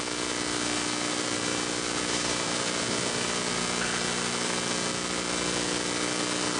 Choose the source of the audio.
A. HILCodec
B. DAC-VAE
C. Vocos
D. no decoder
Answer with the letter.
D